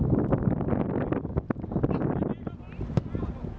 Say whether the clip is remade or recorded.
recorded